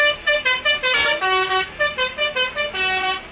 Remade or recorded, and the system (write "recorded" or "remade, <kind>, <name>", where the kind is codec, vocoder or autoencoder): recorded